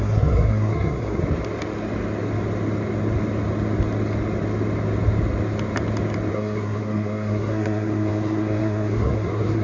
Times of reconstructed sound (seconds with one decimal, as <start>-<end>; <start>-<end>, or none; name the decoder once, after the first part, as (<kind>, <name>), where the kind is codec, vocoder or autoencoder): 0.0-1.2 (codec, SNAC); 6.3-9.6